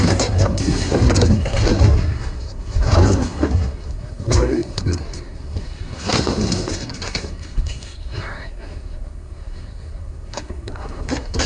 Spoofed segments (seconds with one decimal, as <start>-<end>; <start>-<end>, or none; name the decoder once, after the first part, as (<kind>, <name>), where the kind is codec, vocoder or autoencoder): 0.0-11.5 (codec, SNAC)